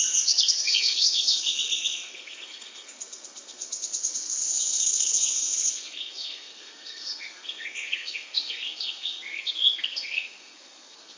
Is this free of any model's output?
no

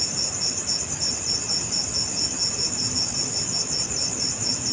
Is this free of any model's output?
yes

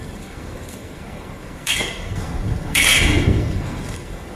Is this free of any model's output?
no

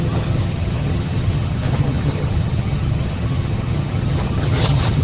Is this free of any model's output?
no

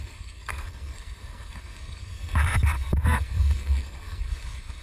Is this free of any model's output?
no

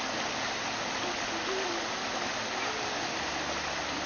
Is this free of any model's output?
yes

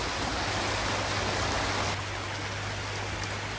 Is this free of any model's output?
yes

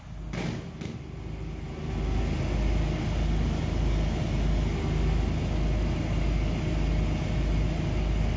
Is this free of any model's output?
yes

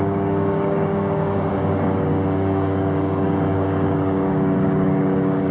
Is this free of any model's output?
no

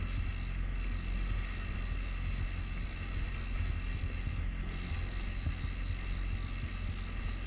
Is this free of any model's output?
yes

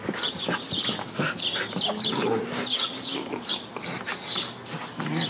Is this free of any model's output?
yes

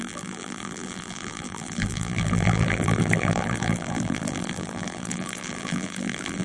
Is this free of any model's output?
no